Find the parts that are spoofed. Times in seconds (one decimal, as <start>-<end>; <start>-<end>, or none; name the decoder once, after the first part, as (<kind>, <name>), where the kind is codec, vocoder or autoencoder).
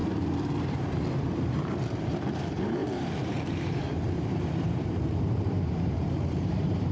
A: 0.6-6.9 (vocoder, BigVGAN v2)